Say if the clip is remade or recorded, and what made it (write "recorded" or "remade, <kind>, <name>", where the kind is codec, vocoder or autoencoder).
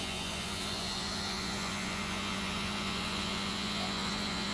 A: remade, vocoder, Vocos